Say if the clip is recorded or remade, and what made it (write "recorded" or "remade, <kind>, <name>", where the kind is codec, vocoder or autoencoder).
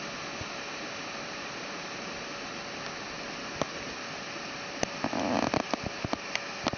recorded